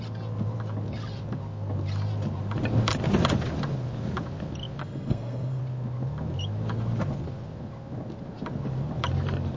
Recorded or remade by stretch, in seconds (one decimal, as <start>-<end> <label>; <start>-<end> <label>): 0.0-4.8 recorded; 4.8-5.6 remade; 5.6-9.6 recorded